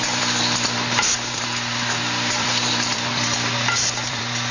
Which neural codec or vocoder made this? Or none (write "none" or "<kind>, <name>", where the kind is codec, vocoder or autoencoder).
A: vocoder, BigVGAN v2